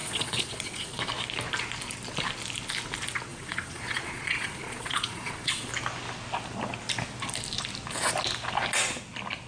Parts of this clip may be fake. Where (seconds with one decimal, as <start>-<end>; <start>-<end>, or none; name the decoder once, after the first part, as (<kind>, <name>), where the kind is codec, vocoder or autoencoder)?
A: 0.0-1.0 (vocoder, Vocos); 3.3-5.7